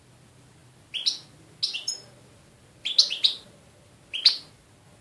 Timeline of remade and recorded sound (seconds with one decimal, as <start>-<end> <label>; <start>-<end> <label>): 0.0-5.0 recorded